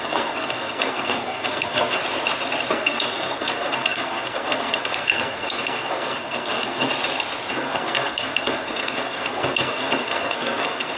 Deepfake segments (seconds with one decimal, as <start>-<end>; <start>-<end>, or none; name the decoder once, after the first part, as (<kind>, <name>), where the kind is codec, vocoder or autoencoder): 0.0-2.0 (codec, SNAC); 2.7-6.9; 7.5-11.0